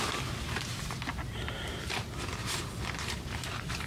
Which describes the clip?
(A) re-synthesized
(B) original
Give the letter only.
B